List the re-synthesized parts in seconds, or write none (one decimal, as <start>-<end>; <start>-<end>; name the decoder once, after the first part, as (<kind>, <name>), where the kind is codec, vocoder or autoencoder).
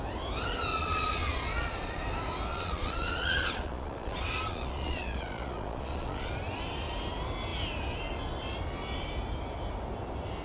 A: 0.7-2.0 (vocoder, Vocos); 2.5-6.3